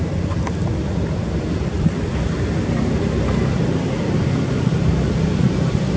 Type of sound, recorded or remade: recorded